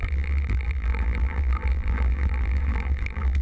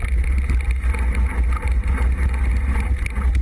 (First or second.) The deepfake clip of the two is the first